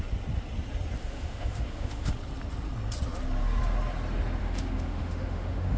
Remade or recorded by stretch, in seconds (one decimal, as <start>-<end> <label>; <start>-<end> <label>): 0.0-1.0 recorded; 1.0-2.1 remade; 2.1-4.4 recorded; 4.4-5.8 remade